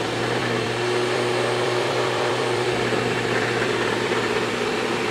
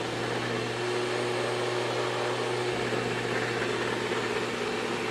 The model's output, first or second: first